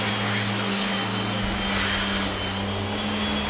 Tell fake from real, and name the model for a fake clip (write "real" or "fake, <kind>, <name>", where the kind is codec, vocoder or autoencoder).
real